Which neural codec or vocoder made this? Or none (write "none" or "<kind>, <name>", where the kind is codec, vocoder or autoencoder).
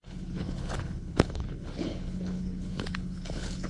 codec, HILCodec